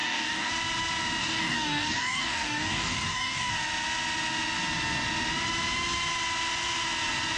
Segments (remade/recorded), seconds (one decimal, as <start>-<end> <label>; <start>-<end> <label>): 0.0-0.5 remade; 0.5-1.2 recorded; 1.2-3.5 remade; 3.5-7.4 recorded